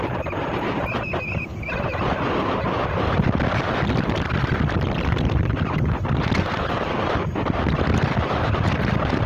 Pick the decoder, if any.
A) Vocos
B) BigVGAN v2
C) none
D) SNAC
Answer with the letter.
B